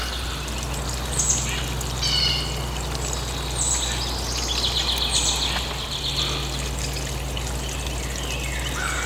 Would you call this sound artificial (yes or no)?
no